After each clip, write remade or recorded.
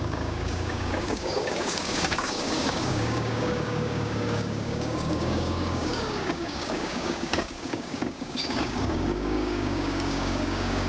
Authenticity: remade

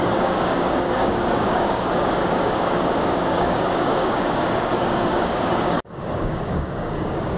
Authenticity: remade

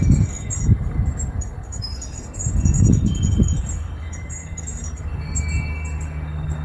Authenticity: remade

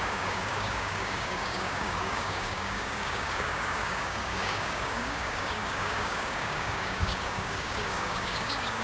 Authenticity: remade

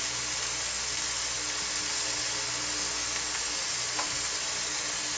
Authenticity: recorded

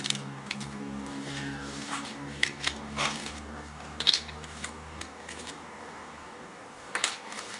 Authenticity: remade